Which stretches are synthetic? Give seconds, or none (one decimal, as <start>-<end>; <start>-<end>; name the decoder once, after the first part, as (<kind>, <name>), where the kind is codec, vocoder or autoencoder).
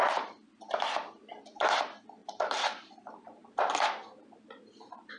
2.2-3.7 (vocoder, BigVGAN v2)